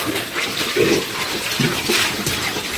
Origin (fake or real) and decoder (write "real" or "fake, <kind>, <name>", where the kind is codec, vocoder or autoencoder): real